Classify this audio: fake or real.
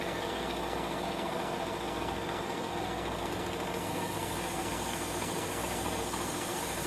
fake